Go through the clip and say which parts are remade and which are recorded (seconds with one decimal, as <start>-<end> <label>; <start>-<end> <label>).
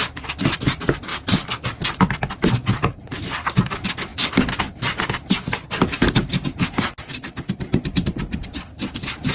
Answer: 0.0-1.1 remade; 1.1-2.1 recorded; 2.1-4.1 remade; 4.1-7.5 recorded; 7.5-9.3 remade